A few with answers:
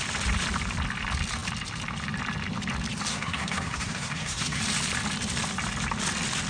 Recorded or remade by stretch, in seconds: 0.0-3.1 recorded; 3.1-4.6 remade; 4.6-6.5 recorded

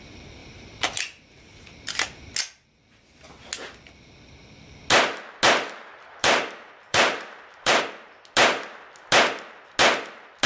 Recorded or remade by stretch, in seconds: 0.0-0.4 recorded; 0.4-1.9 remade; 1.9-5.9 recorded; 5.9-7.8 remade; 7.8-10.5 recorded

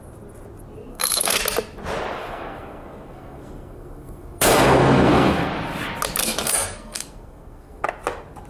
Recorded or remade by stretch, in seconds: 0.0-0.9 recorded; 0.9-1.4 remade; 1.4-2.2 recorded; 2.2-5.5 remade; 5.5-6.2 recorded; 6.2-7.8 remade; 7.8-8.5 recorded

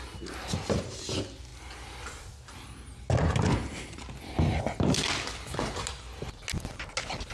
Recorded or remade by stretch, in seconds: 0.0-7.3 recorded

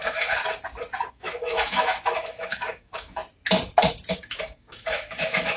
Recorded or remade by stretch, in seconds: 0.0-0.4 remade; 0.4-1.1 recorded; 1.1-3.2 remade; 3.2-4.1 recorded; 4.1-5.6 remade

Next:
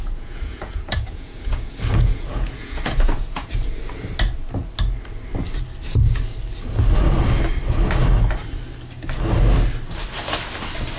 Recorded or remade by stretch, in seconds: 0.0-3.6 remade; 3.6-11.0 recorded

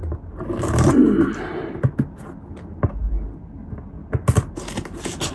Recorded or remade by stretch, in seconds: 0.0-5.3 recorded